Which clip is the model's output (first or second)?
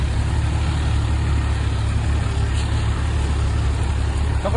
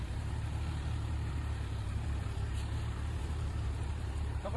second